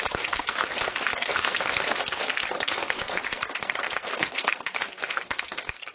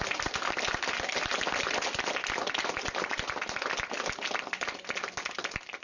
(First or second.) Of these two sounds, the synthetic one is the first